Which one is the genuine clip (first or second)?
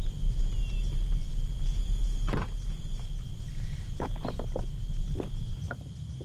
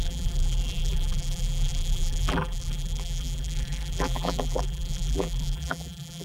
first